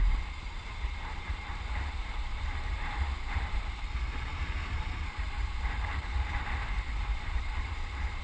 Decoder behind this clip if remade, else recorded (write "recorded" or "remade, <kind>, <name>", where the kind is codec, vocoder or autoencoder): remade, vocoder, BigVGAN v2